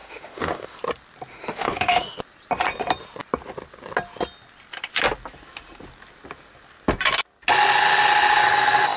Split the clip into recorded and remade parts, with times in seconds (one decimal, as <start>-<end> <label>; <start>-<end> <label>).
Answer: 0.0-0.8 remade; 0.8-1.3 recorded; 1.3-2.2 remade; 2.2-9.0 recorded